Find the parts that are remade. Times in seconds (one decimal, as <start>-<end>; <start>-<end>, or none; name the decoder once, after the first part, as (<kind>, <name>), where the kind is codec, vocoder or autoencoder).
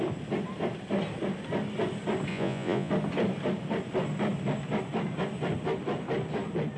2.3-2.9 (vocoder, Vocos)